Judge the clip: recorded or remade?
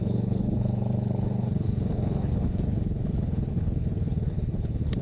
remade